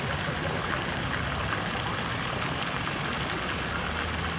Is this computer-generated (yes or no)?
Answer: no